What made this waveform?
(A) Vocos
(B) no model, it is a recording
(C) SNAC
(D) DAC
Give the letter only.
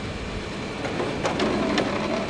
B